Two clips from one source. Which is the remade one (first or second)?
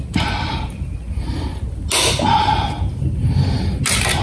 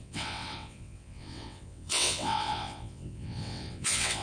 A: second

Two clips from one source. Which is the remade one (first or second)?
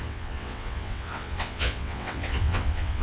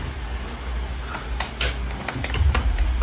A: first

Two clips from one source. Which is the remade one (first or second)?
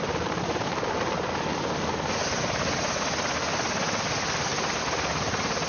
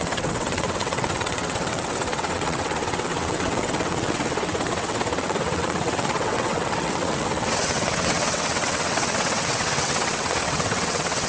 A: second